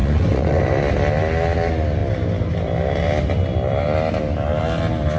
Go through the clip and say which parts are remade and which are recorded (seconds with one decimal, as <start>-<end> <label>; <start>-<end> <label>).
0.0-0.6 remade; 0.6-5.2 recorded